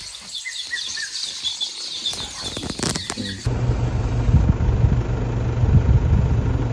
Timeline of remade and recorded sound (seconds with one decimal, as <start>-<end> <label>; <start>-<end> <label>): 0.0-6.7 recorded